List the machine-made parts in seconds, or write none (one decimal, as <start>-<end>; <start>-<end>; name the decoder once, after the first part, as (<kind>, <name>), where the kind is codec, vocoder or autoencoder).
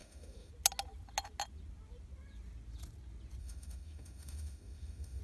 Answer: 0.0-0.5 (autoencoder, DAC-VAE); 3.4-5.2